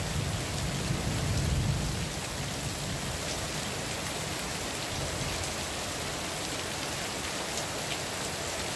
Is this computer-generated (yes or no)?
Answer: no